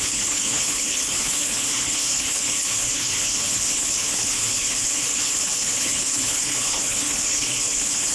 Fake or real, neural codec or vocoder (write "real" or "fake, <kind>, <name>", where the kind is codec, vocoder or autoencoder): fake, codec, HILCodec